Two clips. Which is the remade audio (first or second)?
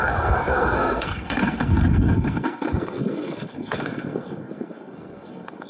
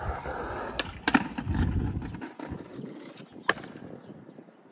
first